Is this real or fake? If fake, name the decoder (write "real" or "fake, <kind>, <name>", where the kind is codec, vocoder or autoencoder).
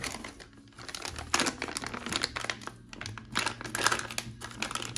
real